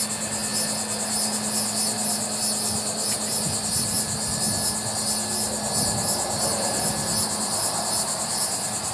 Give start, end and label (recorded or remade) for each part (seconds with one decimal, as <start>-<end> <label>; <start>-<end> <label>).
0.0-8.9 recorded